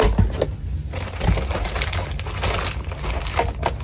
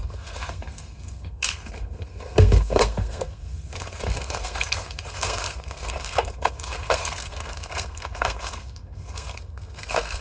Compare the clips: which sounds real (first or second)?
first